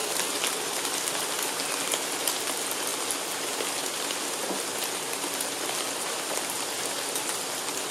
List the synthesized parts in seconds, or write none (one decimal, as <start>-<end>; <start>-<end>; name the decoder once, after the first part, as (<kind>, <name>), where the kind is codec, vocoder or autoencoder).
none